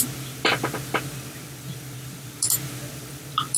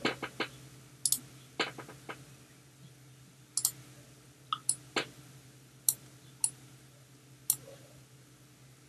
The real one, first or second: second